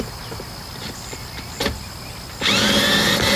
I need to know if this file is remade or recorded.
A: recorded